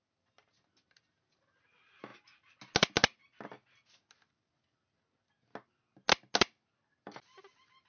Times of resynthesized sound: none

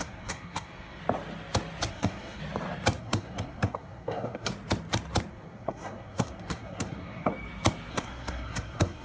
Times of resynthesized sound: 0.0-1.0 (codec, SNAC); 1.9-2.4; 3.0-4.5; 5.3-7.3; 7.9-9.0

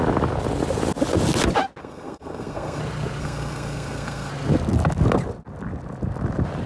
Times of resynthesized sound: 1.8-2.8 (codec, SNAC); 3.2-4.3

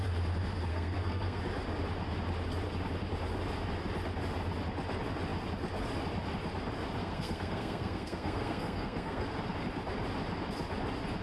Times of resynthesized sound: 0.7-1.4 (codec, SNAC); 7.0-9.2

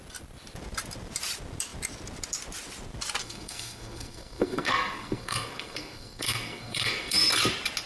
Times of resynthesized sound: 3.2-7.3 (codec, SNAC)

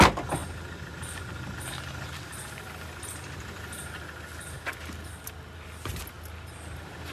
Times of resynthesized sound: none

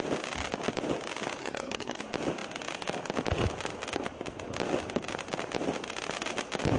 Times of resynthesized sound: 1.4-2.0 (codec, SNAC)

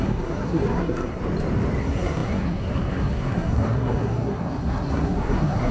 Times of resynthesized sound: 0.0-1.2 (codec, SNAC); 1.8-5.7